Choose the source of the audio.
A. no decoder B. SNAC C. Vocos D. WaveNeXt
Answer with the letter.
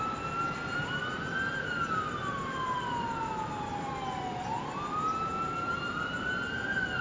A